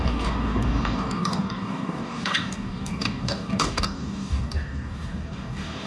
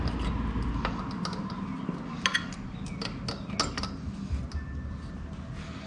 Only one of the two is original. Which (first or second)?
second